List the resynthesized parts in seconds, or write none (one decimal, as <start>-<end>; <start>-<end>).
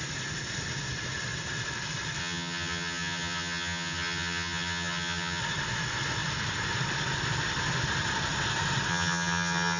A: 2.2-5.4; 8.9-9.8